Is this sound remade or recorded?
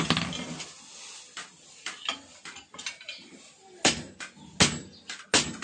recorded